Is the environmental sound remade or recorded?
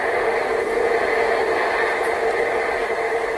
recorded